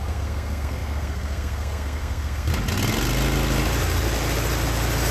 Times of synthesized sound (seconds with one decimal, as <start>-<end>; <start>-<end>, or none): 0.0-2.5